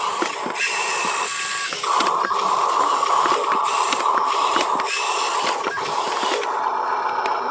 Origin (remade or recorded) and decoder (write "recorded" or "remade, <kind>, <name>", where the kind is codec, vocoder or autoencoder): recorded